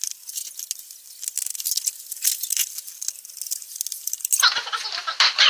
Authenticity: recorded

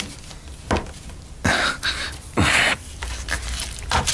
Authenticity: recorded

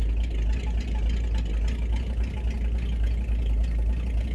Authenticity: recorded